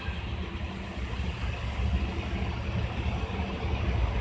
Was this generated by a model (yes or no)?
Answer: no